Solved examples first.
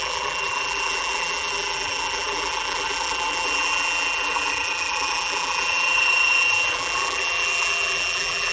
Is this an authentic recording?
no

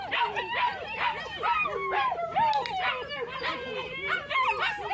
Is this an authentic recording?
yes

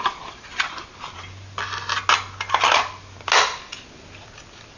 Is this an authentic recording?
yes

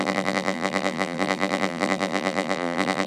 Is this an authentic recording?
no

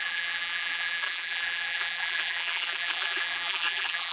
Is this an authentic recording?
no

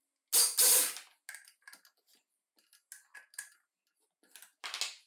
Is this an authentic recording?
yes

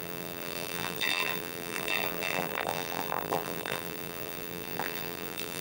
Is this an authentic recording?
no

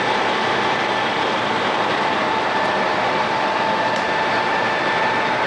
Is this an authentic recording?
no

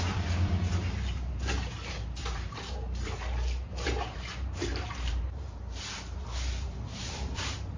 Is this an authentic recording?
no